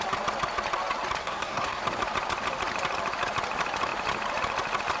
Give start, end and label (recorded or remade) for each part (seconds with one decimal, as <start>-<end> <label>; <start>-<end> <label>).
0.0-1.2 recorded; 1.2-1.8 remade; 1.8-5.0 recorded